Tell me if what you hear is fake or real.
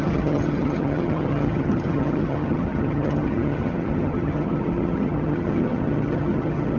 fake